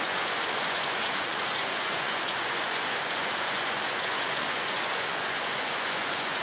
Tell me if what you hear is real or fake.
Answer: fake